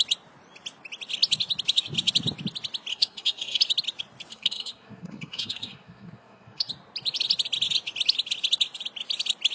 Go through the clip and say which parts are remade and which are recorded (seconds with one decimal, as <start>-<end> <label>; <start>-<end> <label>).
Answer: 0.0-2.9 recorded; 2.9-3.6 remade; 3.6-4.3 recorded; 4.3-6.7 remade; 6.7-9.5 recorded